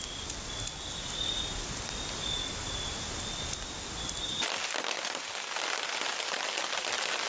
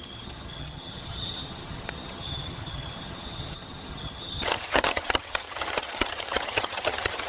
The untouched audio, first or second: first